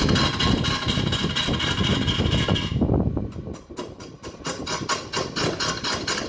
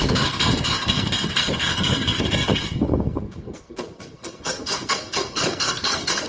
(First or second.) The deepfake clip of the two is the second